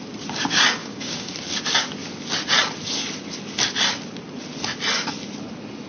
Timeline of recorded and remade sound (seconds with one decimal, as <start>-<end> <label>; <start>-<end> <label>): 0.0-0.8 recorded; 0.8-1.3 remade; 1.3-5.9 recorded